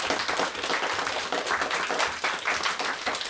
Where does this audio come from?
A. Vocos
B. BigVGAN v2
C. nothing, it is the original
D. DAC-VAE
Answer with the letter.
C